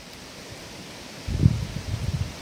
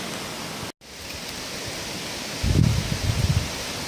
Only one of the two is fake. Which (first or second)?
first